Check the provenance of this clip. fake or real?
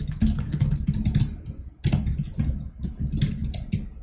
real